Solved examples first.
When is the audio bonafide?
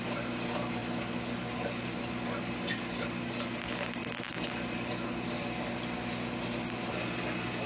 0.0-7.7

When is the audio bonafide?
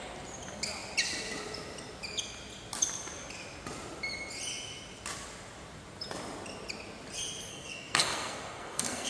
0.0-7.5